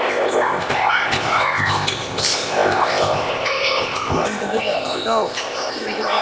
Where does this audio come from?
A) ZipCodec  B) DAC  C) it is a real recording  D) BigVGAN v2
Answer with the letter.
A